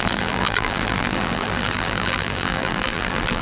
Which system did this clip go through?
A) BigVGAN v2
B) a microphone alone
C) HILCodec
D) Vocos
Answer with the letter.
A